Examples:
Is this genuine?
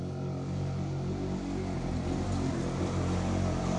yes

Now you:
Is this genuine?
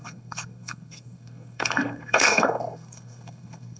no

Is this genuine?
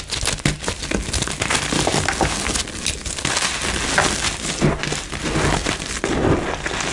yes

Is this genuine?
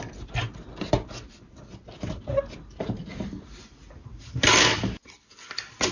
yes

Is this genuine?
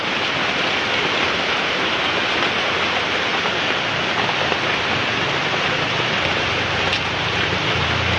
yes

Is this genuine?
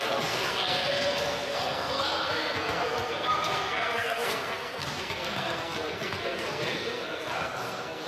no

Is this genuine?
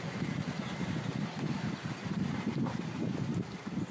yes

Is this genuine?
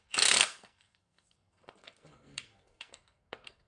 no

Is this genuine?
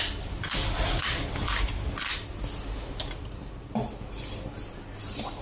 yes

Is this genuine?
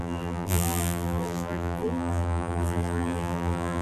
no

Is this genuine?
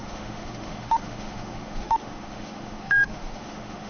no